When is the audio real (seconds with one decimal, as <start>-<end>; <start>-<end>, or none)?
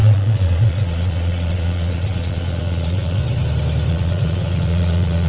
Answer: 3.2-3.9